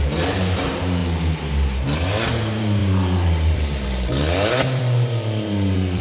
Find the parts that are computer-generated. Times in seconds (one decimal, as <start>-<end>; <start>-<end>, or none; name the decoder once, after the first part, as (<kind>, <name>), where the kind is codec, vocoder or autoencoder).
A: 0.0-1.0 (vocoder, BigVGAN v2); 2.3-6.0